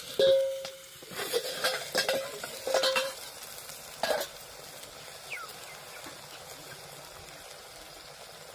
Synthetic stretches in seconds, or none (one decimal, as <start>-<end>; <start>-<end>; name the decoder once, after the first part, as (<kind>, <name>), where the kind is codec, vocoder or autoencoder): none